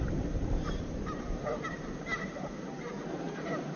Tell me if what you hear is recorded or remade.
remade